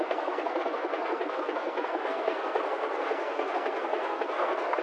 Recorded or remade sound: remade